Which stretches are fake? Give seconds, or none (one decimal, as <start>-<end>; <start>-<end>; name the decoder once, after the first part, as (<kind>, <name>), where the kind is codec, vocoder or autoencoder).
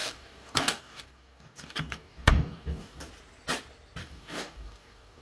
0.0-3.1 (codec, DAC); 4.0-5.2